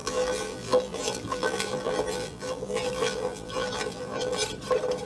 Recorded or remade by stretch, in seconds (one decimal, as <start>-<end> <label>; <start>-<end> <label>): 0.0-4.4 remade; 4.4-5.1 recorded